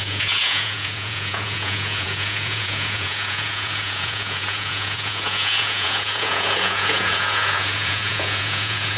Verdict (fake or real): fake